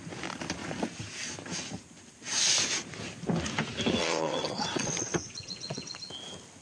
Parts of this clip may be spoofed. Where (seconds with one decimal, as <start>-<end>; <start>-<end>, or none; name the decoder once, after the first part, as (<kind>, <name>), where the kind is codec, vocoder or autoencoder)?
4.0-6.0 (vocoder, WaveNeXt)